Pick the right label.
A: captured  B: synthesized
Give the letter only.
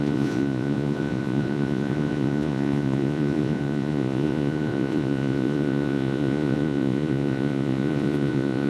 B